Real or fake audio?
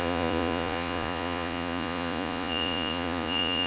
fake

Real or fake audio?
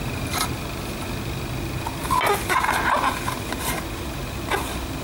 real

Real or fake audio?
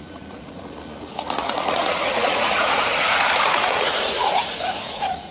fake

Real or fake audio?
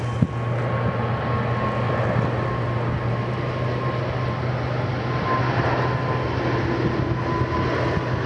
real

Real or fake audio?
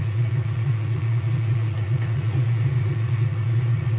fake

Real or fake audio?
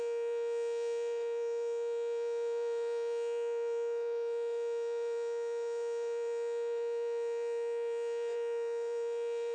fake